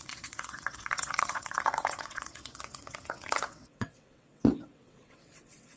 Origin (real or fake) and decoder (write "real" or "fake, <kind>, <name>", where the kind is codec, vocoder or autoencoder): fake, vocoder, WaveNeXt